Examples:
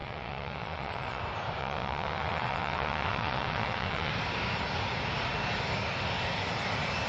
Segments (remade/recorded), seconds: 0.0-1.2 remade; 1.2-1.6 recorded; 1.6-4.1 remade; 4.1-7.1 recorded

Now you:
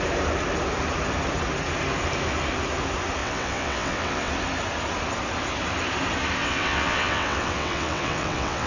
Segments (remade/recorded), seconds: 0.0-3.2 recorded; 3.2-4.3 remade; 4.3-6.4 recorded; 6.4-8.7 remade

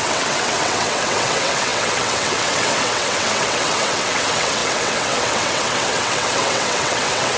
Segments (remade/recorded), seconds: 0.0-7.4 remade

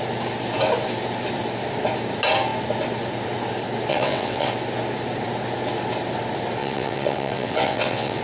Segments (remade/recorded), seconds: 0.0-3.9 recorded; 3.9-4.5 remade; 4.5-6.6 recorded; 6.6-8.2 remade

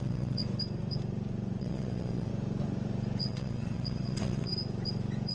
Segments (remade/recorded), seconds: 0.0-0.4 remade; 0.4-1.6 recorded; 1.6-2.3 remade; 2.3-3.2 recorded; 3.2-4.5 remade; 4.5-5.3 recorded

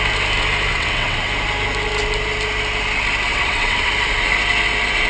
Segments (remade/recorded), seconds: 0.0-0.7 recorded; 0.7-1.3 remade; 1.3-3.3 recorded; 3.3-3.9 remade; 3.9-5.1 recorded